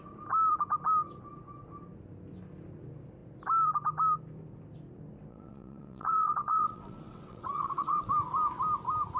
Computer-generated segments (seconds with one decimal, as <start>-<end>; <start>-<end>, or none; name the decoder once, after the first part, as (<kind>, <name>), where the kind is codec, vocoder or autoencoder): 5.3-8.1 (vocoder, WaveNeXt)